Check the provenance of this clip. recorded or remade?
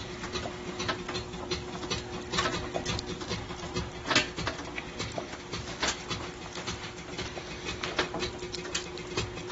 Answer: recorded